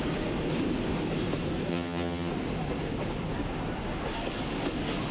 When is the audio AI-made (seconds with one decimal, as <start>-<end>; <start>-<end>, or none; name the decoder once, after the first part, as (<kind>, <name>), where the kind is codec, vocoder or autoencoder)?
1.7-2.3 (vocoder, HiFi-GAN)